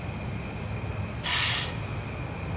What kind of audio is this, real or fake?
real